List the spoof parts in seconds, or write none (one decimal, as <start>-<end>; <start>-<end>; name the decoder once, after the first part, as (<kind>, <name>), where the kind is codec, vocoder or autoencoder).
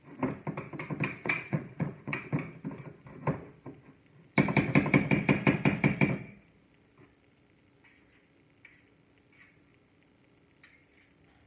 1.2-2.2 (vocoder, Vocos)